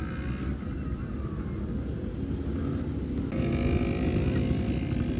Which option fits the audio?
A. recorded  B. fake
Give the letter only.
A